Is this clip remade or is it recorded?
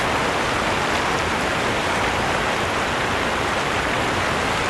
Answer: recorded